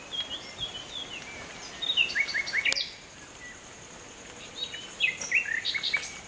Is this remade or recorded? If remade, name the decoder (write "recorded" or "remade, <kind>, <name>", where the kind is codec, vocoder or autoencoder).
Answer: recorded